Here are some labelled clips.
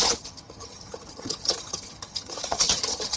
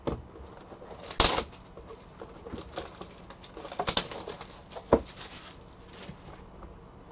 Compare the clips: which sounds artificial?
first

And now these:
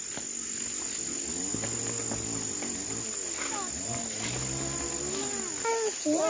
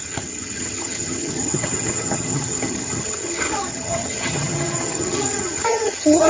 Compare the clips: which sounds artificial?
second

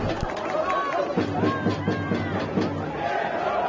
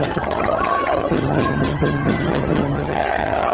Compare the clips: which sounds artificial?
second